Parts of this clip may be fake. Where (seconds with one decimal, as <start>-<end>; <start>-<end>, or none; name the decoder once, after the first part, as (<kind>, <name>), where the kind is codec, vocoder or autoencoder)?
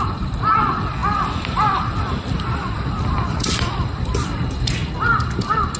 0.0-4.8 (vocoder, BigVGAN v2)